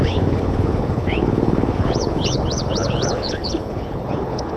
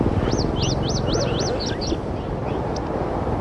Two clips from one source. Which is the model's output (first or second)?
first